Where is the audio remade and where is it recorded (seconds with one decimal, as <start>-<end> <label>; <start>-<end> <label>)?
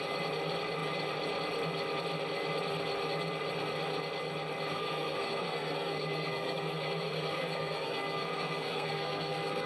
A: 0.0-4.7 recorded; 4.7-9.7 remade